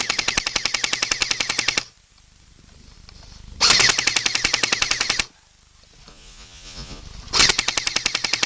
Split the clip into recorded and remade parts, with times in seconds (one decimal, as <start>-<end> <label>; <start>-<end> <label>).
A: 0.0-6.1 recorded; 6.1-7.0 remade; 7.0-8.5 recorded